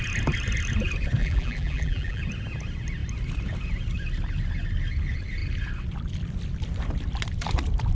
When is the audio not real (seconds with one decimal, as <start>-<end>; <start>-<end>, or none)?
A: 1.2-2.2